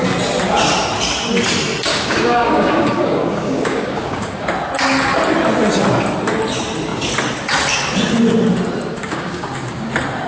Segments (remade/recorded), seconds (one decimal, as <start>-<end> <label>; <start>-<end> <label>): 0.0-1.9 recorded; 1.9-4.5 remade; 4.5-8.9 recorded; 8.9-9.9 remade; 9.9-10.3 recorded